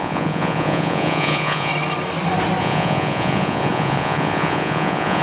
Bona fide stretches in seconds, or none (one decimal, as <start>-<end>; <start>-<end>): 1.7-2.6